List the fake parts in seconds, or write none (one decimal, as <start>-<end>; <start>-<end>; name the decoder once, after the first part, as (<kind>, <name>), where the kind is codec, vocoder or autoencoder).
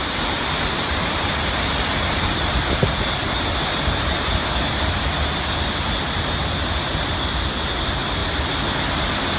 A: none